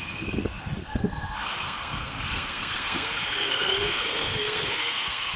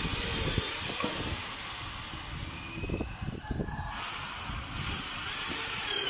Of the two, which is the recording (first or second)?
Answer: second